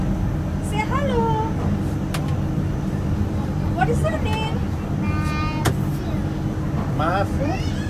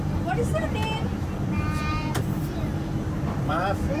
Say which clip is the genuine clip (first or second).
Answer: first